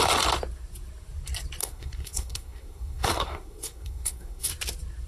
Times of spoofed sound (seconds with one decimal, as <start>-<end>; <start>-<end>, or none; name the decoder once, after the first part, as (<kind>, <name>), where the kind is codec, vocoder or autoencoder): 1.6-4.5 (codec, SNAC)